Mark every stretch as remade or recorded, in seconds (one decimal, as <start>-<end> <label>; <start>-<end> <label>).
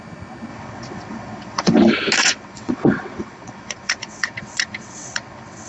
0.0-0.5 recorded; 0.5-1.8 remade; 1.8-2.2 recorded; 2.2-5.7 remade